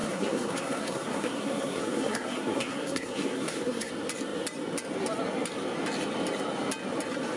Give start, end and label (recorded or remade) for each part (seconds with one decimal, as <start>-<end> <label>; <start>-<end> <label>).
0.0-3.9 remade; 3.9-7.4 recorded